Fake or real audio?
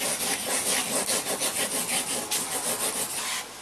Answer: real